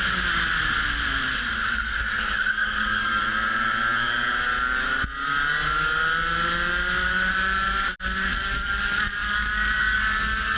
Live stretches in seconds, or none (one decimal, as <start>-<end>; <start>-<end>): 0.0-2.6; 3.2-8.3